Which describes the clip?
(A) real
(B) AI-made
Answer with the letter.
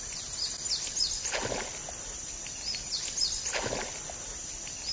A